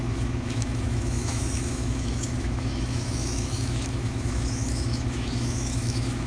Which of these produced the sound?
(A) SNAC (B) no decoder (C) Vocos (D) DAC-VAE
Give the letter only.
D